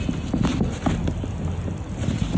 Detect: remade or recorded recorded